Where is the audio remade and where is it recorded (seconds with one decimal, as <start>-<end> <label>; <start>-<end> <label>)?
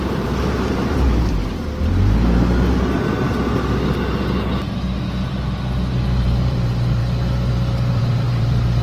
0.0-1.4 remade; 1.4-6.2 recorded; 6.2-7.0 remade; 7.0-8.0 recorded; 8.0-8.8 remade